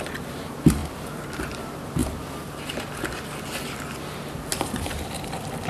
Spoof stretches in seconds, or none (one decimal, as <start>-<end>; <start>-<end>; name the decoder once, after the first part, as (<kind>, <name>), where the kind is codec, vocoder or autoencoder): 4.5-5.3 (vocoder, BigVGAN v2)